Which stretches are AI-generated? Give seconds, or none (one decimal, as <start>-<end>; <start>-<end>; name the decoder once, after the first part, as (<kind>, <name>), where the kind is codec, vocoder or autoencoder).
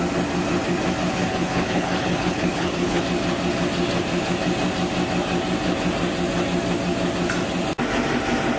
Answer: 1.2-3.0 (codec, HILCodec)